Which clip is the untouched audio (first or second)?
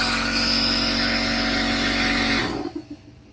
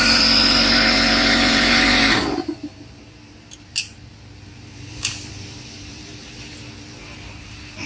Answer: first